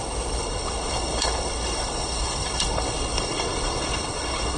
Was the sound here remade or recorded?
remade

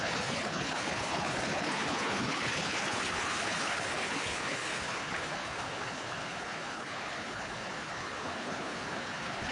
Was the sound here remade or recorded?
remade